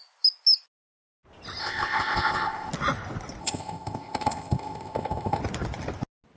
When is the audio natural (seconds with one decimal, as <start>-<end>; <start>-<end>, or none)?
0.0-1.6; 2.7-3.4; 5.4-6.4